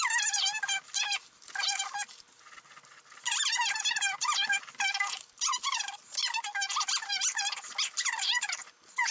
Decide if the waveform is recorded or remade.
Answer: recorded